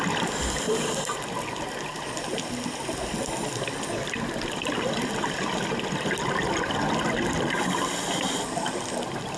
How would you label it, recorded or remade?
recorded